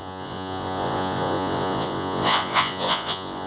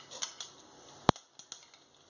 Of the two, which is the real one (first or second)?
second